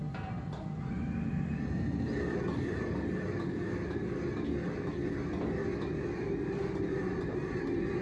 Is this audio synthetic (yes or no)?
no